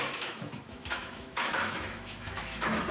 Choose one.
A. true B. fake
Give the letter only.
B